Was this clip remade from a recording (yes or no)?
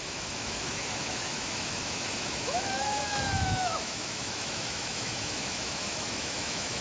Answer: yes